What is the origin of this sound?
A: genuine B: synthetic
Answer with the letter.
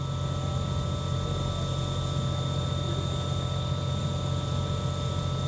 A